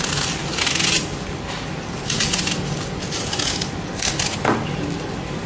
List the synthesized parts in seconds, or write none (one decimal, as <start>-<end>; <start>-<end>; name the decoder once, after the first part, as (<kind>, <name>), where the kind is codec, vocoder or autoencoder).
none